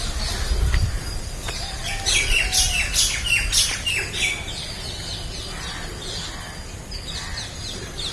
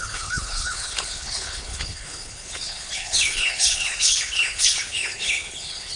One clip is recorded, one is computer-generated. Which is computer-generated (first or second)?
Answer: second